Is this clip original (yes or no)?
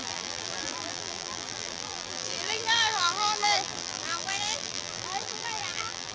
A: no